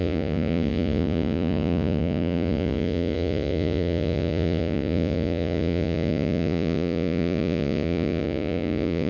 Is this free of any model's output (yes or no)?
no